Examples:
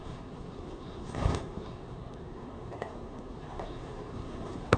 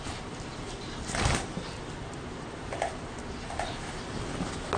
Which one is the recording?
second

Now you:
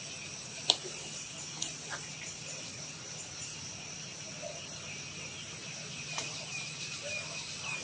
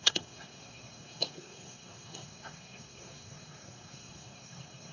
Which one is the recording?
first